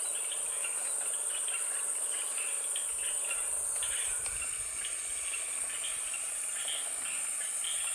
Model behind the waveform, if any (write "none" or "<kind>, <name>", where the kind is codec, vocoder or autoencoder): none